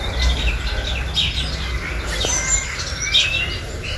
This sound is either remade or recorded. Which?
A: recorded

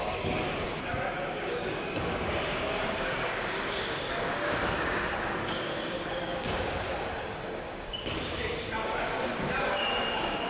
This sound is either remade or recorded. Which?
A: remade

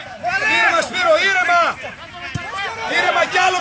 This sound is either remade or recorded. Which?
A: recorded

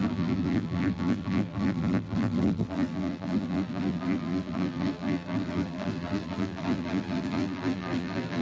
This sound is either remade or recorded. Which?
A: remade